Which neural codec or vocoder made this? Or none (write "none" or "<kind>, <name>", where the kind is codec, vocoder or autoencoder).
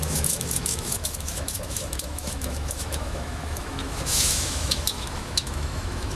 autoencoder, DAC-VAE